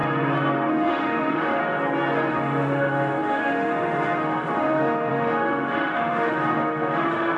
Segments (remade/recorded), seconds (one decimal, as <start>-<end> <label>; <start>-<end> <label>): 0.0-0.7 recorded; 0.7-1.6 remade; 1.6-2.3 recorded; 2.3-7.4 remade